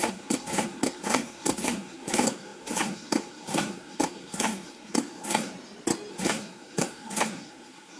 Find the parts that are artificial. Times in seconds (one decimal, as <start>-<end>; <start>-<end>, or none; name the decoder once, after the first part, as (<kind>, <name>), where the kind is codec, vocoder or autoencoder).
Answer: 0.0-5.5 (codec, SNAC); 6.1-8.0